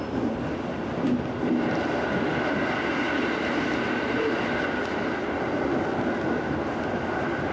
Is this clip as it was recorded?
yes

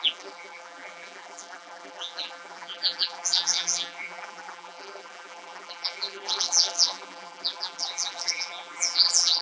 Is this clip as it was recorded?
no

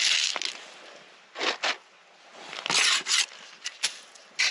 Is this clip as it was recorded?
yes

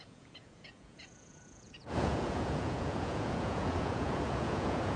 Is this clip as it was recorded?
no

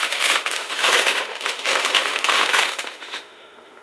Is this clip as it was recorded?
no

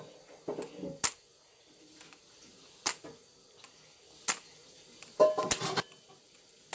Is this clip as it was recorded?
yes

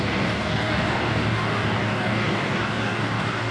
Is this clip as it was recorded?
no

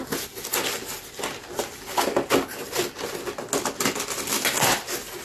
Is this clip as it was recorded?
yes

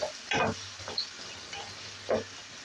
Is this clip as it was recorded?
yes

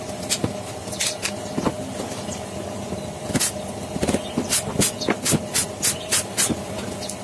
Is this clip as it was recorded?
yes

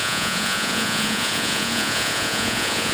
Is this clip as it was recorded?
no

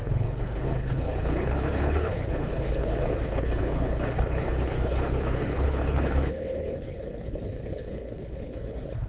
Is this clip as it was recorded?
no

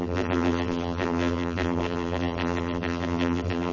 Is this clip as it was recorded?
no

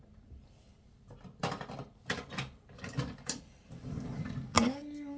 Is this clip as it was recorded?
yes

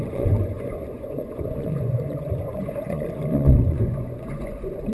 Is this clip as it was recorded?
no